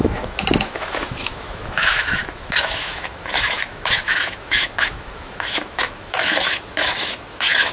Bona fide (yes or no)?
no